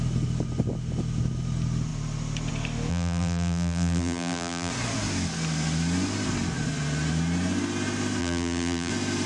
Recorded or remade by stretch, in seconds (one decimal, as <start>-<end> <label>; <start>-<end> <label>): 0.0-2.9 recorded; 2.9-4.7 remade; 4.7-8.2 recorded; 8.2-8.9 remade; 8.9-9.3 recorded

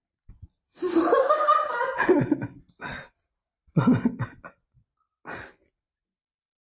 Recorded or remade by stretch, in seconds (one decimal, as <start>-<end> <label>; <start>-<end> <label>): 0.0-4.0 remade; 4.0-6.7 recorded

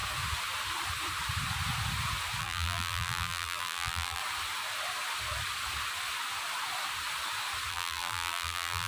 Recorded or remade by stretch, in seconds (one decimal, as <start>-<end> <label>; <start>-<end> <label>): 0.0-2.4 recorded; 2.4-4.2 remade; 4.2-7.7 recorded; 7.7-8.9 remade

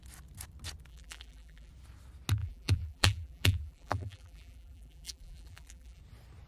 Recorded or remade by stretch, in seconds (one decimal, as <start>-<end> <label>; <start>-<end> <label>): 0.0-0.9 recorded; 0.9-1.7 remade; 1.7-2.4 recorded; 2.4-6.0 remade; 6.0-6.5 recorded

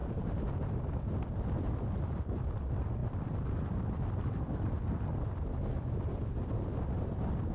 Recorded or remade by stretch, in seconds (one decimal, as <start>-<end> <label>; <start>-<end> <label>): 0.0-7.5 remade

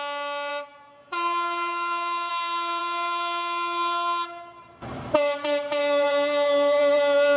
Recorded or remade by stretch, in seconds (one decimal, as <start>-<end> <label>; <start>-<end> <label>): 0.0-0.5 recorded; 0.5-2.3 remade; 2.3-2.8 recorded; 2.8-7.4 remade